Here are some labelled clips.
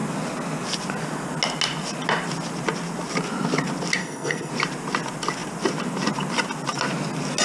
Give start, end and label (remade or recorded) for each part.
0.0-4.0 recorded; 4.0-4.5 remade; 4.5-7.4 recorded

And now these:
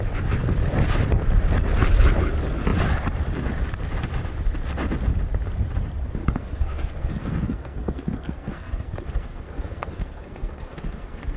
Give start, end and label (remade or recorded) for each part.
0.0-6.2 recorded; 6.2-11.4 remade